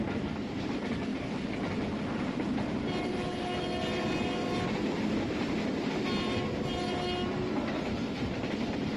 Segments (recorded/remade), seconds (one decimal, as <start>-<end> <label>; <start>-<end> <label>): 0.0-9.0 recorded